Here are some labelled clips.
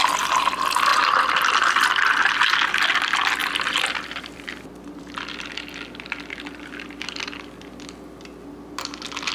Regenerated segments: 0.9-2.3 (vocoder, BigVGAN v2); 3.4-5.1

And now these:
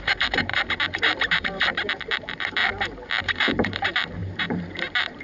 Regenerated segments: 0.0-2.6 (vocoder, BigVGAN v2); 3.2-5.2

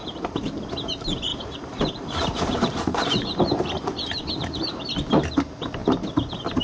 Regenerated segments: 0.0-0.5 (vocoder, BigVGAN v2); 1.3-4.2

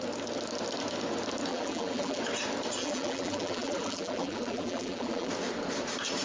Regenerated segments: 1.5-2.2 (vocoder, BigVGAN v2); 2.8-5.3